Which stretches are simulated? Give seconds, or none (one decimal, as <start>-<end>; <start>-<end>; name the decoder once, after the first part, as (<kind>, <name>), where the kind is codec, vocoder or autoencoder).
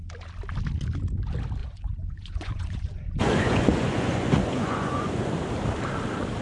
1.6-5.3 (vocoder, Vocos)